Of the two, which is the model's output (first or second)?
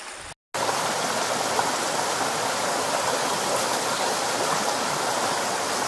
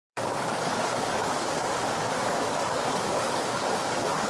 second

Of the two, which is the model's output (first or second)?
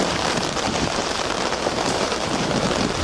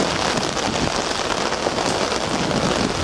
first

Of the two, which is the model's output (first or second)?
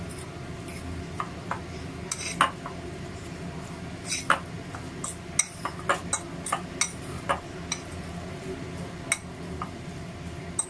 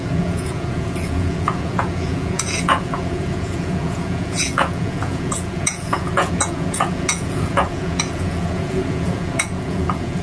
second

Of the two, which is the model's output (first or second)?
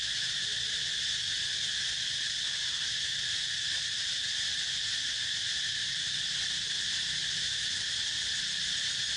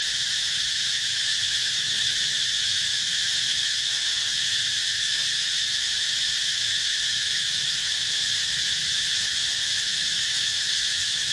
second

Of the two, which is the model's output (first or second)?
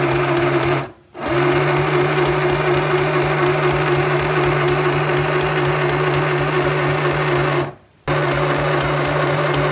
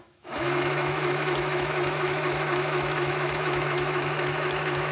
second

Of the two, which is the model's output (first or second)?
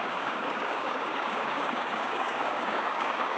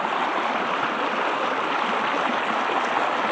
first